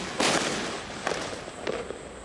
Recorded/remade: recorded